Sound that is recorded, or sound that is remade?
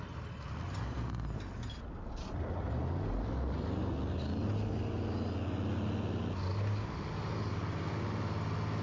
recorded